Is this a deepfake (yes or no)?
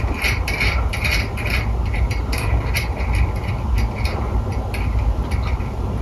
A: no